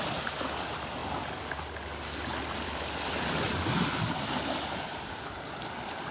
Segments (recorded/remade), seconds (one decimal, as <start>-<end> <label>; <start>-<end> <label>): 0.0-1.0 recorded; 1.0-1.6 remade; 1.6-2.3 recorded; 2.3-6.1 remade